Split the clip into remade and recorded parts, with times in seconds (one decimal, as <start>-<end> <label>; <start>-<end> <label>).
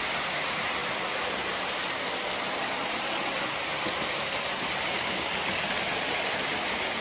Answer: 0.0-7.0 recorded